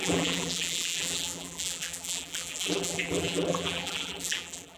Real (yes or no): no